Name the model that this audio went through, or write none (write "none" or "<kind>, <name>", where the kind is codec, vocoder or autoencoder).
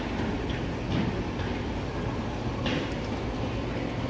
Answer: none